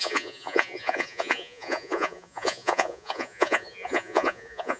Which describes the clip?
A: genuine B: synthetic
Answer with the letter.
B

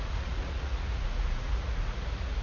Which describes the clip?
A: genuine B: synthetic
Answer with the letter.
B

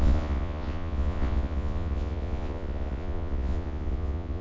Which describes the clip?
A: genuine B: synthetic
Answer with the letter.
B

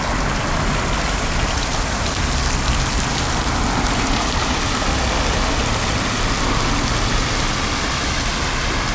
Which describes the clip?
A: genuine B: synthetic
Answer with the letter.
A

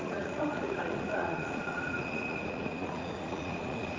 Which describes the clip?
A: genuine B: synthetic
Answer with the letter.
B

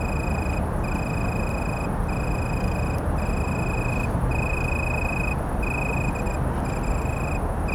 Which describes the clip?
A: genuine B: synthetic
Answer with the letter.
A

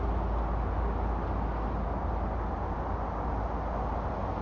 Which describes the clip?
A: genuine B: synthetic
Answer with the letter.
A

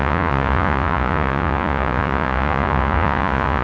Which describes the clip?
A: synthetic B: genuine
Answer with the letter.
A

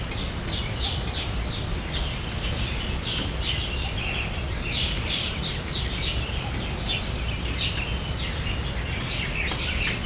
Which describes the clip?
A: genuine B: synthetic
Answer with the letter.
A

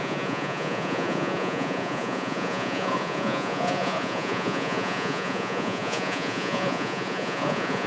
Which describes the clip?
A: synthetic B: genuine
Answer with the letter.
A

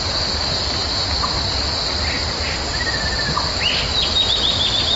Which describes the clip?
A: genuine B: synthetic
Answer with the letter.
A